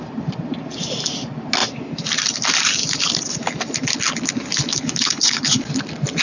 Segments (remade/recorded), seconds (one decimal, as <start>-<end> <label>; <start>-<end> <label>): 0.0-4.7 recorded; 4.7-5.6 remade; 5.6-6.2 recorded